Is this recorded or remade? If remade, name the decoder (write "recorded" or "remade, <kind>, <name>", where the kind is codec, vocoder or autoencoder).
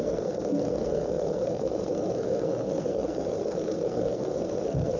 remade, codec, SNAC